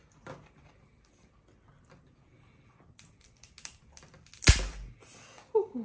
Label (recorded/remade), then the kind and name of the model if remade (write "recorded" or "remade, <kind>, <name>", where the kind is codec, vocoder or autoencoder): recorded